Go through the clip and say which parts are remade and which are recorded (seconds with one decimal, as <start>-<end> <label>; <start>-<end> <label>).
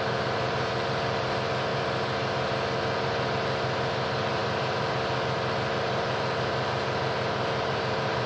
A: 0.0-8.3 remade